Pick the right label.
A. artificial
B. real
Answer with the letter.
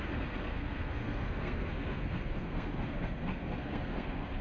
A